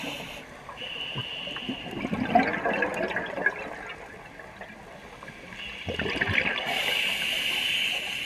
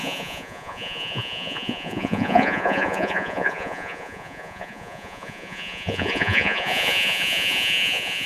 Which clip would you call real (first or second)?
first